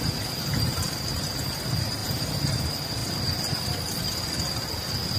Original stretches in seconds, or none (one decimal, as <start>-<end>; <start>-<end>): 0.0-5.2